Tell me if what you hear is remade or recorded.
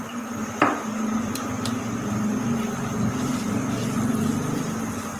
remade